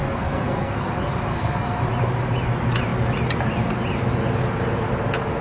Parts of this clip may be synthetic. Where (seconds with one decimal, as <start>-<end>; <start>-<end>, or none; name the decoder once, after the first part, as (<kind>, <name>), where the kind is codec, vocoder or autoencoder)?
0.0-0.9 (codec, SNAC); 1.3-1.8